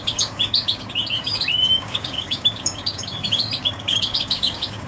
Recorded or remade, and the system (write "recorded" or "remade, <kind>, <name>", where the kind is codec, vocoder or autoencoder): remade, codec, DAC